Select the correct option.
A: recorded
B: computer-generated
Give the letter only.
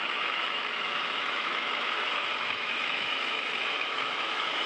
B